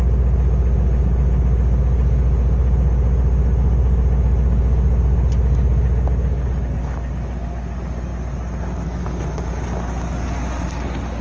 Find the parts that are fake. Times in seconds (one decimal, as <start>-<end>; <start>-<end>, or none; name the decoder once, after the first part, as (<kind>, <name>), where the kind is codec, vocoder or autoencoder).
none

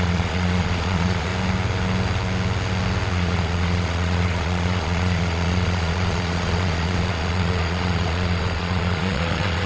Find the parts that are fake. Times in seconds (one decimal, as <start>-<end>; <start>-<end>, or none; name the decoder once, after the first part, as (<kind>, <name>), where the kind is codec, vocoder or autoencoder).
0.0-1.3 (vocoder, Vocos); 3.1-9.7